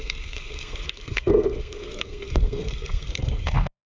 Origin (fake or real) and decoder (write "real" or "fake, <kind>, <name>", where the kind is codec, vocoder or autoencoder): fake, codec, SNAC